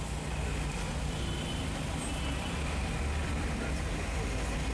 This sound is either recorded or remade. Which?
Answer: recorded